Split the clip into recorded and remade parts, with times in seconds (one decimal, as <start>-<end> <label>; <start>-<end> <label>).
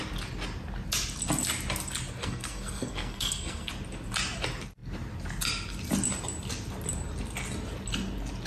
0.0-2.2 recorded; 2.2-3.7 remade; 3.7-8.5 recorded